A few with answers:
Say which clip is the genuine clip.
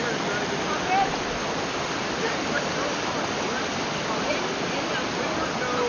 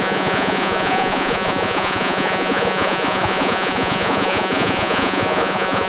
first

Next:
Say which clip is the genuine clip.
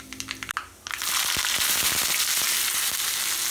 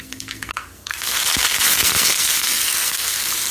first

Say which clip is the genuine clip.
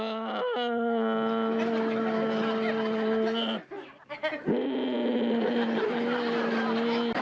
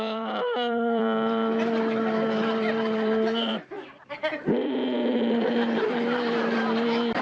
first